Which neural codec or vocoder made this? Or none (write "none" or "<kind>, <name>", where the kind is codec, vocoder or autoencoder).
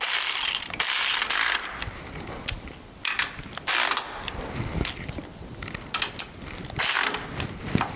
none